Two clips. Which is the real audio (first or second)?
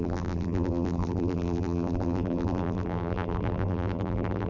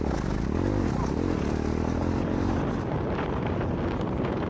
second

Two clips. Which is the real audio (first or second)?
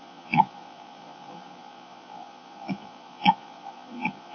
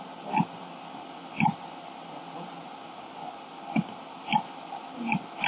second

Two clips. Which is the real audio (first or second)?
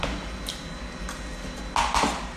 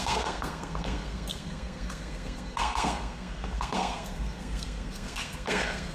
first